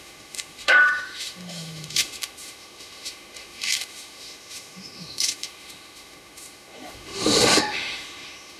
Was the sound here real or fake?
fake